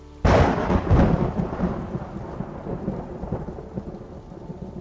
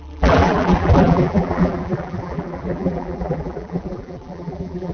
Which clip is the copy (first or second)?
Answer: second